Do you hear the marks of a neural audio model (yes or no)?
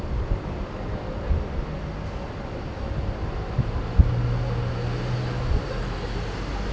no